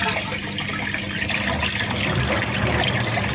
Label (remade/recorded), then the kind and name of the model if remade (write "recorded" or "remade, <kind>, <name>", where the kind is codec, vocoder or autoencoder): recorded